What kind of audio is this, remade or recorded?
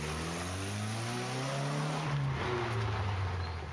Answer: recorded